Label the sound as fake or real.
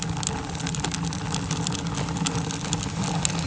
real